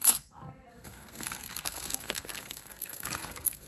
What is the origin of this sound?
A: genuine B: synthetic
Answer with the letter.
B